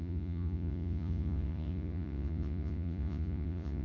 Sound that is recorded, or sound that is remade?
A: remade